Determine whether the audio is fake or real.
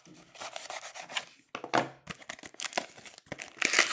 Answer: real